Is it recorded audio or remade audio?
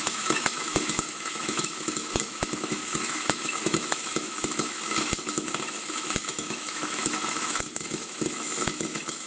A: remade